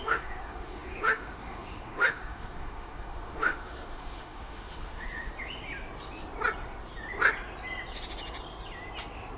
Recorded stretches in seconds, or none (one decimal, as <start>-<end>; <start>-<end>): 5.3-9.4